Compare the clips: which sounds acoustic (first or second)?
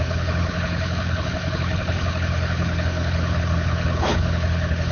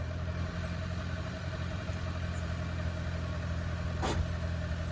second